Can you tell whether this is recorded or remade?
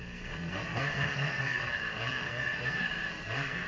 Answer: remade